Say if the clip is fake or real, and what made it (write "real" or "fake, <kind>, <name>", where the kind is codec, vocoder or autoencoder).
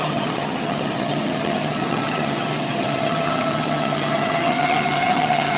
fake, vocoder, HiFi-GAN